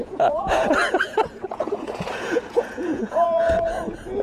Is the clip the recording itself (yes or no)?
no